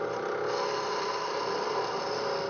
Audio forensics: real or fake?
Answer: real